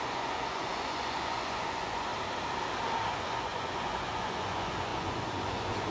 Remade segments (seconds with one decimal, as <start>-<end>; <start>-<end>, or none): 0.0-2.1; 3.1-5.9